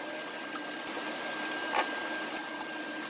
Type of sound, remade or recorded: recorded